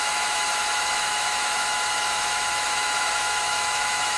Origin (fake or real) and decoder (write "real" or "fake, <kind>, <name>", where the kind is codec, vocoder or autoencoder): fake, autoencoder, DAC-VAE